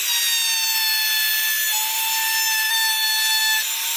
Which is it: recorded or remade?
recorded